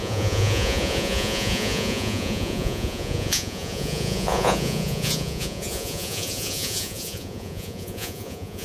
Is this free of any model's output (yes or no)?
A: no